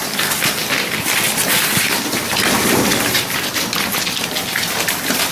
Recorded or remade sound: recorded